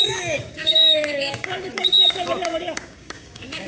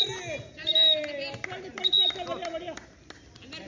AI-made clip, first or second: first